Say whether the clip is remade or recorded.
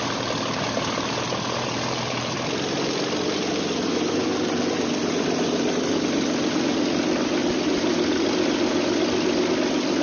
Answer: recorded